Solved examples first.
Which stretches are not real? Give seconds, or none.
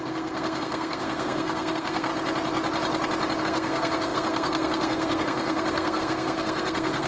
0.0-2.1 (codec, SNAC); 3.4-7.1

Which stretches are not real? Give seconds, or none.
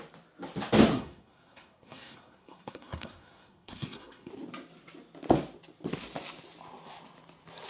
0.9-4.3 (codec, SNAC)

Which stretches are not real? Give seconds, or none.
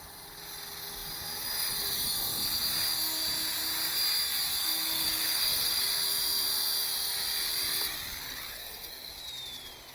4.6-5.9 (codec, SNAC); 8.6-9.1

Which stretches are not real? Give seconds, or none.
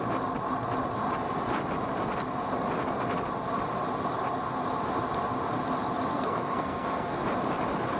6.1-7.2 (codec, SNAC)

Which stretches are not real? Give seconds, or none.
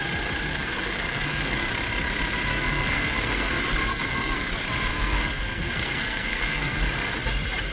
0.5-1.7 (codec, SNAC); 2.5-3.5; 3.9-4.5; 4.9-6.8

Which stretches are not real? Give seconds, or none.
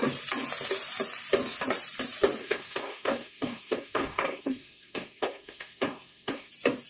2.4-6.5 (codec, SNAC)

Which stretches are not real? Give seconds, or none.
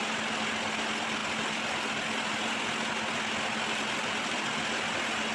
none